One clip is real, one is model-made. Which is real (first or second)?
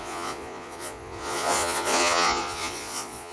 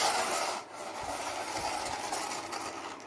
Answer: second